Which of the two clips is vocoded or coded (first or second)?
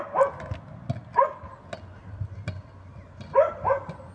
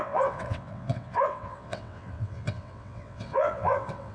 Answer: second